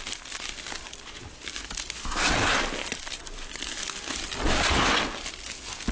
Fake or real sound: real